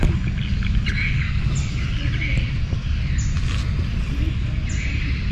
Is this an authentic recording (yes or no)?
yes